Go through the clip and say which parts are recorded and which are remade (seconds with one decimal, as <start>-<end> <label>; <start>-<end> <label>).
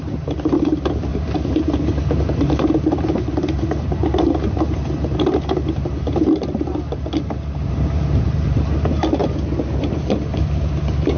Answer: 0.0-9.2 remade; 9.2-9.8 recorded; 9.8-11.2 remade